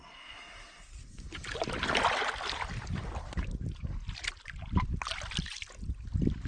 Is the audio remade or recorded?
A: recorded